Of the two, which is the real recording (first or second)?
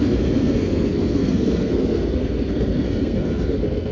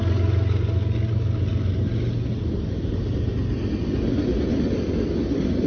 second